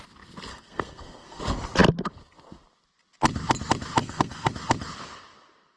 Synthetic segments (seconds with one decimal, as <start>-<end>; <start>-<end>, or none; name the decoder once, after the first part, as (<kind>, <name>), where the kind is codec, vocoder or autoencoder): 0.5-1.4 (codec, SNAC); 4.0-4.5